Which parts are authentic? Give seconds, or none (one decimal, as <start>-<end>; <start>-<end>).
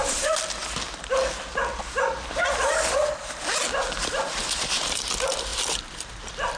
0.0-5.5